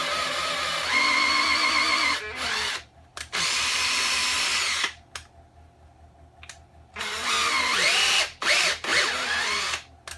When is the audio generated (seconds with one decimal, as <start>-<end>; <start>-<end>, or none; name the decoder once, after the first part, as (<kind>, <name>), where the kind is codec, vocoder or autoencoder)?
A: 2.6-4.2 (vocoder, BigVGAN v2); 7.5-8.9